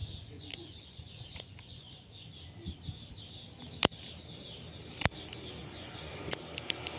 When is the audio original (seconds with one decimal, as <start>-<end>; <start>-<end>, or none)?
2.3-5.6; 6.4-7.0